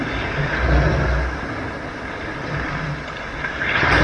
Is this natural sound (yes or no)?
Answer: yes